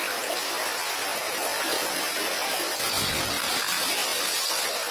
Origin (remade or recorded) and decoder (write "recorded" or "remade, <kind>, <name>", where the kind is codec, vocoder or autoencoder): recorded